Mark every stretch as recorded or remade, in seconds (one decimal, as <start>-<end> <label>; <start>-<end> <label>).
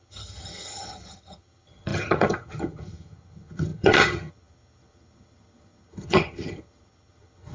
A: 0.0-7.5 remade